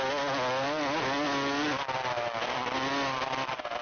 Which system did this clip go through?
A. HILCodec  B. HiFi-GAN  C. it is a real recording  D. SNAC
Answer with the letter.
C